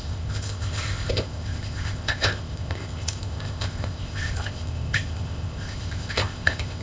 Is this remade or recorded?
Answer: remade